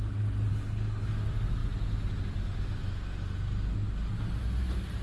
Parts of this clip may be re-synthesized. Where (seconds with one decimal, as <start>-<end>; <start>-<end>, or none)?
0.5-1.1